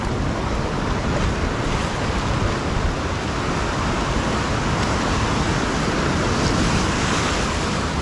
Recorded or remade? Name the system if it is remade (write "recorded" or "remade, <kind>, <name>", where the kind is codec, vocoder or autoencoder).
recorded